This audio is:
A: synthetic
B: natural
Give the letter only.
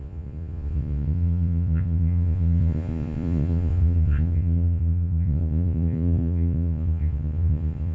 A